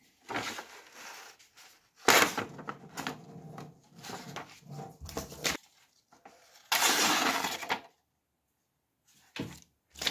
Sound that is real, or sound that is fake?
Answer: real